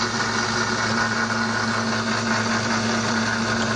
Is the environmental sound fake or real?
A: real